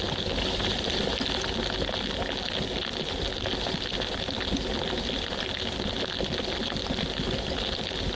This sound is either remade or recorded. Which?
recorded